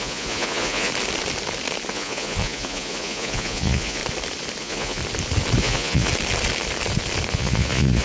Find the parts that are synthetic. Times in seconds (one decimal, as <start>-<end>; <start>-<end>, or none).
0.0-0.9; 1.9-4.0; 4.6-5.0; 5.6-6.1; 7.3-8.0